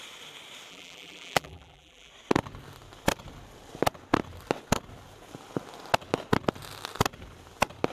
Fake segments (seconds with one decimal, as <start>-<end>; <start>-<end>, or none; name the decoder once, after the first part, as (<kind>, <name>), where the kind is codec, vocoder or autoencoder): 0.7-2.1 (vocoder, BigVGAN v2)